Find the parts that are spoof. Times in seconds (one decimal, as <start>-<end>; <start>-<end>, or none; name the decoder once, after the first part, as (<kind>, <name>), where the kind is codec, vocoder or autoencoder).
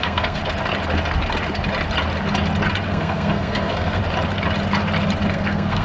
0.0-0.4 (codec, SNAC); 2.9-4.0; 5.3-5.8